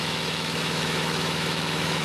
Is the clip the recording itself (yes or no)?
no